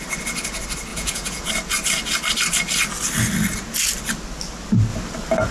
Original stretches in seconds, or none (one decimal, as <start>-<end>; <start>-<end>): 0.0-0.9; 1.5-5.5